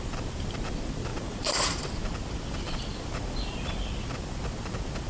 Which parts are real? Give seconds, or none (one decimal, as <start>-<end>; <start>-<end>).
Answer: 0.0-1.1; 1.8-5.1